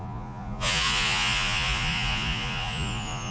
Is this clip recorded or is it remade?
remade